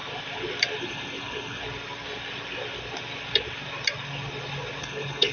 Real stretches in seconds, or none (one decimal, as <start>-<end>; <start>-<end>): 0.0-0.8; 1.6-4.8